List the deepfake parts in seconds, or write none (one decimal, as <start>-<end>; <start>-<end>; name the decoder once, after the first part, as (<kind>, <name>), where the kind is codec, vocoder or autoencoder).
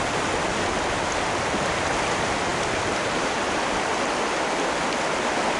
2.5-3.9 (vocoder, BigVGAN v2)